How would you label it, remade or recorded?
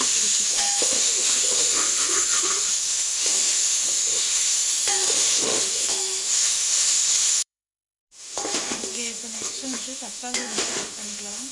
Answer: remade